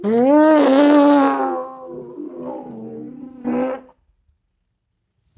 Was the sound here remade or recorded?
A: recorded